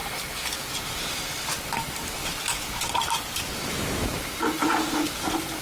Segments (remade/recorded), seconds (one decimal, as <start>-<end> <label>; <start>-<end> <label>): 0.0-2.9 recorded; 2.9-5.6 remade